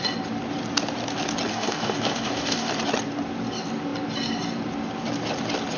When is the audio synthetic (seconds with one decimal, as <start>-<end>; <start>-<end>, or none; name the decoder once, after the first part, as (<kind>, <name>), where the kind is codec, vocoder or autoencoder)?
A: 1.5-2.7 (codec, DAC)